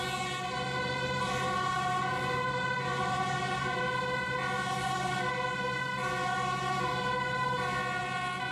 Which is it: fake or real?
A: real